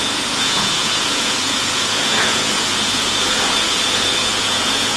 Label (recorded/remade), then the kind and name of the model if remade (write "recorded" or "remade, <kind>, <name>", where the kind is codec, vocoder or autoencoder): remade, vocoder, Vocos